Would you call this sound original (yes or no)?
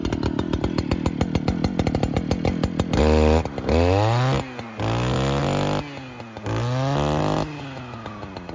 yes